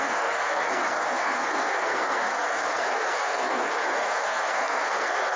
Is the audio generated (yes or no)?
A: yes